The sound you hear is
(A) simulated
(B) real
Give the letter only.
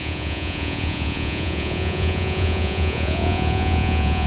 A